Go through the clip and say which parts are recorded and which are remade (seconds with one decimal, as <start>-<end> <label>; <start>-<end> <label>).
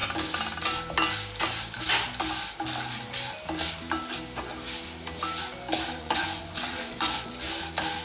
0.0-6.0 recorded; 6.0-7.3 remade; 7.3-8.0 recorded